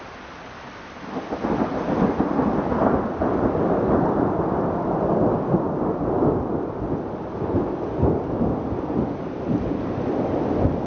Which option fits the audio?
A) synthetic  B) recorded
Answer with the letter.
B